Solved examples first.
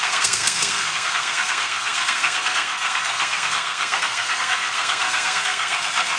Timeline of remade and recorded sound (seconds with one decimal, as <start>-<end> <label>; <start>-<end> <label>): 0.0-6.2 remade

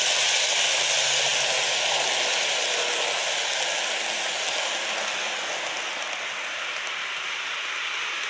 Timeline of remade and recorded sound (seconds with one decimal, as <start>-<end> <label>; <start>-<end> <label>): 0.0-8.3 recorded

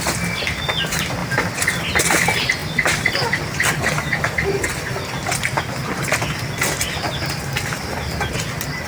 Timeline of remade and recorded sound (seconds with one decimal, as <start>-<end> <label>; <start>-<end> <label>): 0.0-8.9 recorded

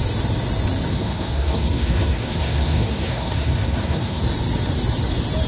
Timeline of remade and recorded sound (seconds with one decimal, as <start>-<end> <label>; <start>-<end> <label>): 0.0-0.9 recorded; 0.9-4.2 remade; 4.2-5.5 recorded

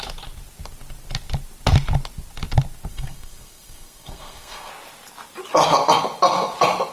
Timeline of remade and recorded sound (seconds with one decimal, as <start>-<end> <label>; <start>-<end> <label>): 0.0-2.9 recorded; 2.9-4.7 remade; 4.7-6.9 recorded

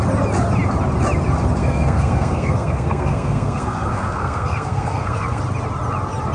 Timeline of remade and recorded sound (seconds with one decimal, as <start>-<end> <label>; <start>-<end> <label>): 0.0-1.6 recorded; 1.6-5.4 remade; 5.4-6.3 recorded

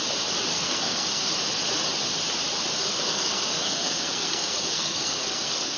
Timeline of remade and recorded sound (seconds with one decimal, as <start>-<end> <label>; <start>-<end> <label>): 0.0-0.5 recorded; 0.5-1.3 remade; 1.3-2.8 recorded; 2.8-5.8 remade